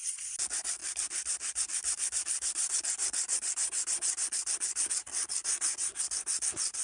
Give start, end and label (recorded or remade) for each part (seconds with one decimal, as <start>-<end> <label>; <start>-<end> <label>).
0.0-6.8 recorded